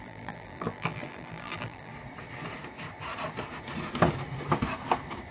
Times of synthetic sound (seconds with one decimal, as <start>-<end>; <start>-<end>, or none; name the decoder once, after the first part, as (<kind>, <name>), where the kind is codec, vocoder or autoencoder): 0.0-1.9 (vocoder, BigVGAN v2)